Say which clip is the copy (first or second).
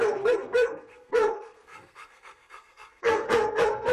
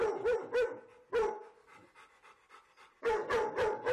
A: first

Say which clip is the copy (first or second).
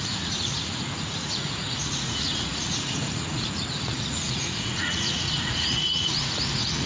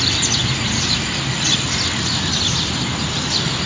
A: first